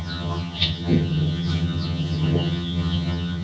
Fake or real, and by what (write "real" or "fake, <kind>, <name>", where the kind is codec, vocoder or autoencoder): fake, vocoder, HiFi-GAN